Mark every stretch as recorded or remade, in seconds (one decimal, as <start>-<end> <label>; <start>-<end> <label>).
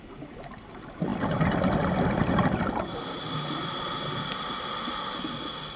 0.0-5.8 recorded